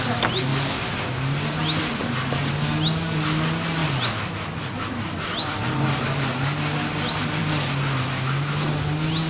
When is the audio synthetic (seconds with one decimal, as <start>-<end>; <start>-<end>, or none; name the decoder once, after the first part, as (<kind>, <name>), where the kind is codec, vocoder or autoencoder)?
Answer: 3.8-6.4 (vocoder, BigVGAN v2); 7.4-8.1